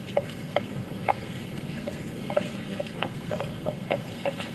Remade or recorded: remade